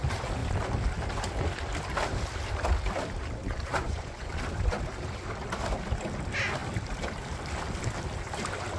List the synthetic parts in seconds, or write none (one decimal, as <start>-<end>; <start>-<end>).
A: 3.7-4.3